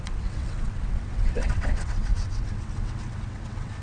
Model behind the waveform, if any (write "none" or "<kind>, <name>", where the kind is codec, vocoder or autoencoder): vocoder, WaveNeXt